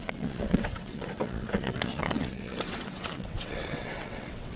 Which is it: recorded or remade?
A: remade